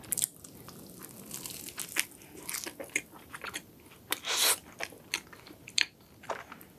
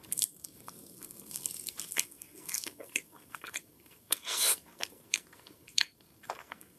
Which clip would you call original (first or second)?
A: first